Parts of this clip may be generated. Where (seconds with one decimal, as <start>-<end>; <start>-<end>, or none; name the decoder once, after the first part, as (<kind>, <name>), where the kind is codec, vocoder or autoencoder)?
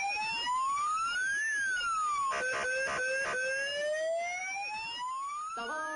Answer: none